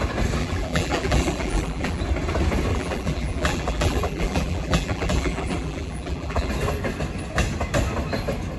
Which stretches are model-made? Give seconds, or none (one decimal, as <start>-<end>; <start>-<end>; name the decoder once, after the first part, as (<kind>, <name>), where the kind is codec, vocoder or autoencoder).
0.4-2.0 (vocoder, BigVGAN v2); 2.7-6.5